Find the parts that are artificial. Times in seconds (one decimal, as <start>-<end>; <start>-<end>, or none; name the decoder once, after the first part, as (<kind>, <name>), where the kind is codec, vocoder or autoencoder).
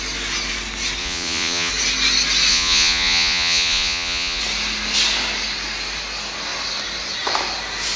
1.0-1.7 (vocoder, Vocos); 2.5-4.4